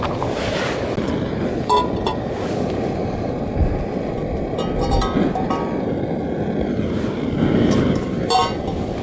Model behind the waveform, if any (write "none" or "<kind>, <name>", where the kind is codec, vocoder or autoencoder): none